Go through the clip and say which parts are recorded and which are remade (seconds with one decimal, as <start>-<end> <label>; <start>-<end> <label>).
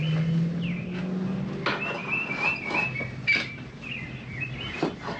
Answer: 0.0-5.2 recorded